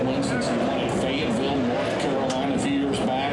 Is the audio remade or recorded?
recorded